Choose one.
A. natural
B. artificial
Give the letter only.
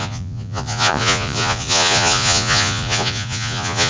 B